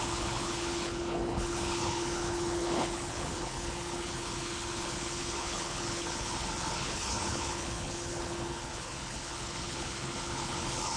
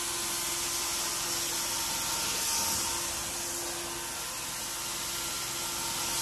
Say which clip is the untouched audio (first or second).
second